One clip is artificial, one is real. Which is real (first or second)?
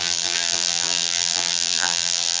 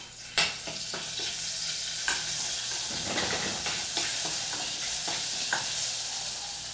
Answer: second